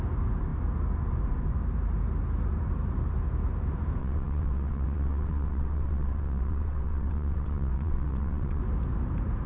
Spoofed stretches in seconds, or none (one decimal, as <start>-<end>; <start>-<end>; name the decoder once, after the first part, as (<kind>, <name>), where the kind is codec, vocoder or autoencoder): 4.0-8.6 (vocoder, WaveNeXt)